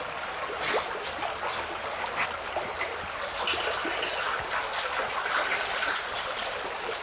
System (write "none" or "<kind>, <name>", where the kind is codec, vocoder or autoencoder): none